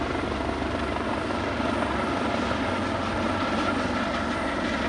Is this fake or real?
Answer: real